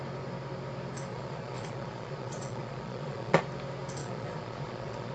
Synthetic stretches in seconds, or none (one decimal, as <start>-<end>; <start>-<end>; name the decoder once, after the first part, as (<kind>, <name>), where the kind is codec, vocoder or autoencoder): 1.1-3.4 (vocoder, Vocos); 4.0-5.1